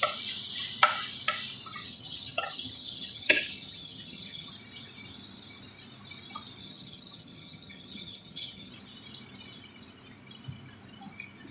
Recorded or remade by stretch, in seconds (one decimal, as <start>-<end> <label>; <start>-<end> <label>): 0.0-1.8 recorded; 1.8-4.5 remade; 4.5-6.6 recorded; 6.6-8.7 remade; 8.7-11.5 recorded